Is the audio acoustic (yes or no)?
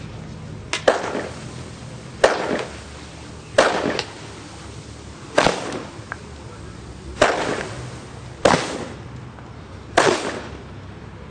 yes